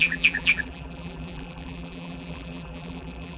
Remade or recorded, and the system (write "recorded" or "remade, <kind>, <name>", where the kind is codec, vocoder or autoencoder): remade, vocoder, BigVGAN v2